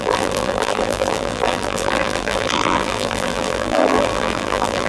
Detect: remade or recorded remade